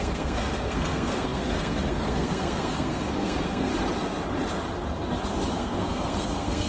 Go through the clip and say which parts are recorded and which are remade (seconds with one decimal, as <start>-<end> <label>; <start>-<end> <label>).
0.0-3.7 remade; 3.7-5.5 recorded; 5.5-6.7 remade